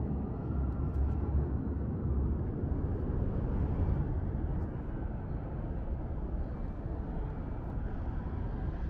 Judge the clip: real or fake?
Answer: real